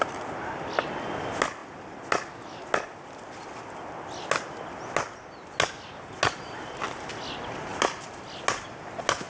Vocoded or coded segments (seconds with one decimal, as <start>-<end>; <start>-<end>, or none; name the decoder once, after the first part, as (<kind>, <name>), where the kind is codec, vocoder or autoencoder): none